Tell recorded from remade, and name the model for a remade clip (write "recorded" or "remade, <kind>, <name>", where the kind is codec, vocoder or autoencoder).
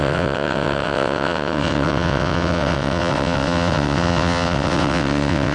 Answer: remade, vocoder, WaveNeXt